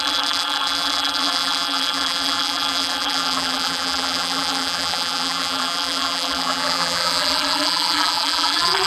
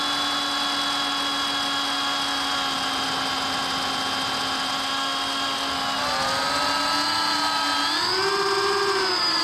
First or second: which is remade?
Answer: first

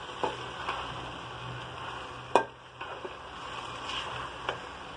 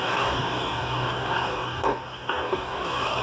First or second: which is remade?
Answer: second